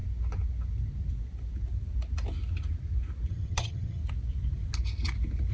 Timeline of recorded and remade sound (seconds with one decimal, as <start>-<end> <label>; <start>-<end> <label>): 0.0-3.3 recorded; 3.3-4.0 remade; 4.0-5.5 recorded